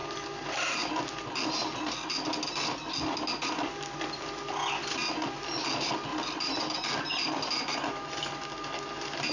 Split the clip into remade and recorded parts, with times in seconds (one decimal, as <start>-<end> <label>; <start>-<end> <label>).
0.0-1.2 remade; 1.2-6.1 recorded; 6.1-6.6 remade; 6.6-9.3 recorded